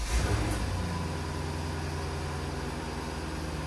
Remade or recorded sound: recorded